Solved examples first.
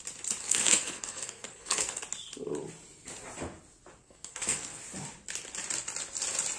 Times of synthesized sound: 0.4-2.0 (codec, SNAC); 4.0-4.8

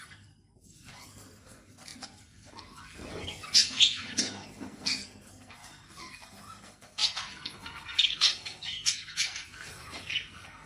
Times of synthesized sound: 0.0-10.7 (codec, SNAC)

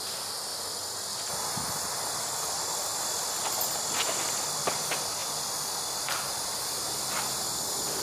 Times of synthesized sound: none

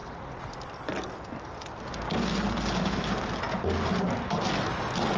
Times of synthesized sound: none